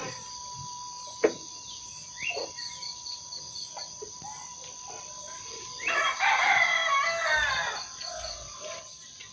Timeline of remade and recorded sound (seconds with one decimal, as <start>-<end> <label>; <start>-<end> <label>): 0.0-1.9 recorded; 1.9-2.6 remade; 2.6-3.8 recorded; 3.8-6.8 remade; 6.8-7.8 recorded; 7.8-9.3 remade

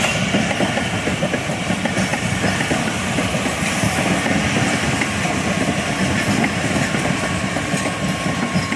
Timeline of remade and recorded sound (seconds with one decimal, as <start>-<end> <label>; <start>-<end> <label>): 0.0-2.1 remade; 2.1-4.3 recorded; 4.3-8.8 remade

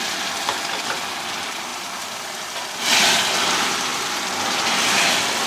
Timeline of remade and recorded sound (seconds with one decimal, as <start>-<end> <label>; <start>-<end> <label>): 0.0-5.5 recorded